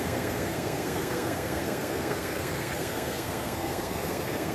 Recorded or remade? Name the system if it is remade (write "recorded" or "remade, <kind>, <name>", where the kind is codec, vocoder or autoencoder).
remade, codec, SNAC